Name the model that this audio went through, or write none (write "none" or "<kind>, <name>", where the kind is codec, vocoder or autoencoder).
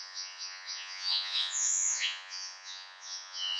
vocoder, Vocos